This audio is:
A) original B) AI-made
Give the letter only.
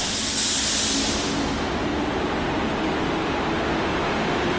A